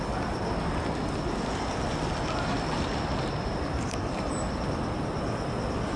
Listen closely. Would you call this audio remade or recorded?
recorded